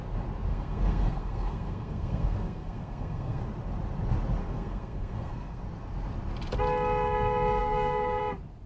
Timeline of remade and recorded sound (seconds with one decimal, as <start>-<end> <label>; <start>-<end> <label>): 0.0-0.5 recorded; 0.5-3.4 remade; 3.4-4.4 recorded; 4.4-5.6 remade; 5.6-7.6 recorded; 7.6-8.2 remade; 8.2-8.7 recorded